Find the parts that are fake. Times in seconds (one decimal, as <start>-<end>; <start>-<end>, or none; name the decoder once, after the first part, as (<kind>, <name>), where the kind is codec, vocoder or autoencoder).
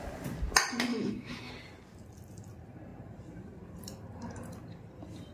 0.9-1.5 (autoencoder, DAC-VAE)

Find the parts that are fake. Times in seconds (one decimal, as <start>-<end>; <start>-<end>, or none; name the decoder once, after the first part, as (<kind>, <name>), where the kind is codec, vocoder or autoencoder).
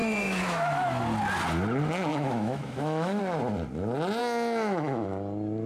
0.0-1.0 (autoencoder, DAC-VAE); 2.1-3.2; 4.2-5.1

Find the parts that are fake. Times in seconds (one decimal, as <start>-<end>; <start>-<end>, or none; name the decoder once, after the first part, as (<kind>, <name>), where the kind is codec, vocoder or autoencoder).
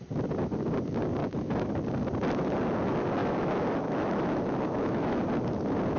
1.2-1.7 (autoencoder, DAC-VAE); 3.2-5.2